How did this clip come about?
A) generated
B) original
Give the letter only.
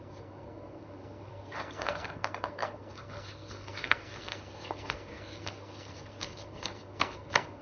A